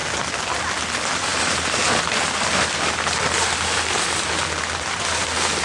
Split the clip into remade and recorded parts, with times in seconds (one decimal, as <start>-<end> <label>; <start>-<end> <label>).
0.0-5.6 recorded